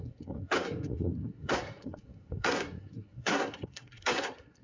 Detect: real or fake fake